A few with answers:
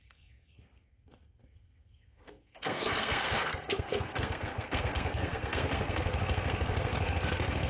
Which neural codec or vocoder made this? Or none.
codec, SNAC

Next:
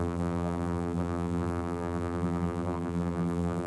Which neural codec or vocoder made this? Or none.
vocoder, BigVGAN v2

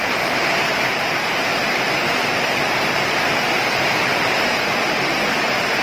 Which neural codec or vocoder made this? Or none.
vocoder, BigVGAN v2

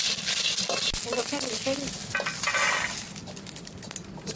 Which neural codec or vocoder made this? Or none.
none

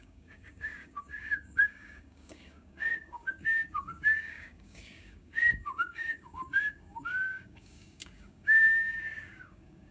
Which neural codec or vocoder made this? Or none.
codec, DAC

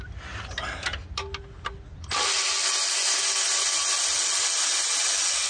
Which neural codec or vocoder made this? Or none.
none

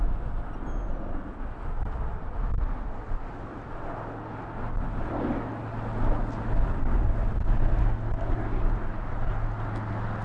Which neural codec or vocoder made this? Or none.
none